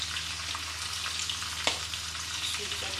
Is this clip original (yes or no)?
yes